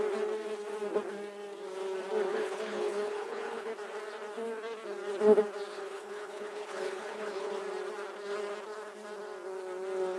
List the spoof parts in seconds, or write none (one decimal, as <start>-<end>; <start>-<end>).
2.3-3.7; 5.7-7.5